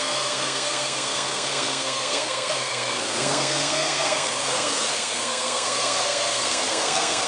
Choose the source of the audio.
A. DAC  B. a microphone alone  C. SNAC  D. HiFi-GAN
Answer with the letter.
C